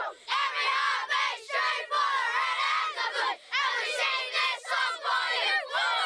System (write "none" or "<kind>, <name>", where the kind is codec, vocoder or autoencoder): none